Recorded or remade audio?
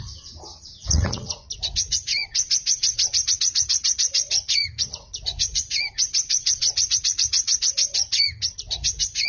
remade